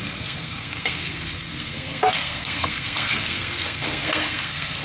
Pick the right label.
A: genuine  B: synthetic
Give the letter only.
B